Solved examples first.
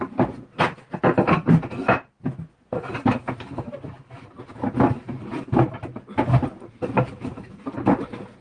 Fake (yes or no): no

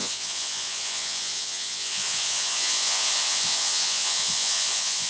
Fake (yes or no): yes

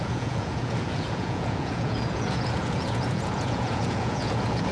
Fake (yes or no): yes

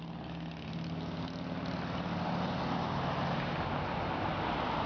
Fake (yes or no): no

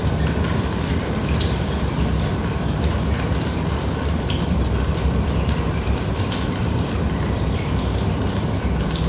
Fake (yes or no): yes